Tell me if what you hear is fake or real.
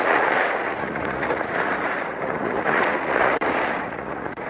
fake